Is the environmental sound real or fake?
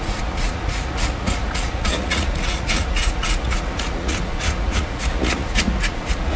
fake